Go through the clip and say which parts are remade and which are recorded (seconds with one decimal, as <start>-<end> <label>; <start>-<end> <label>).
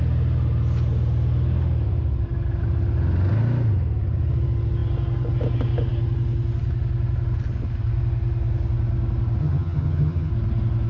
0.0-9.4 recorded; 9.4-10.3 remade; 10.3-10.9 recorded